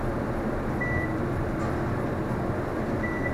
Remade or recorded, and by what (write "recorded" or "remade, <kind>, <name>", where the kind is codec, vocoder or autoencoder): recorded